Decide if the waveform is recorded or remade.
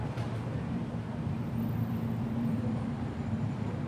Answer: remade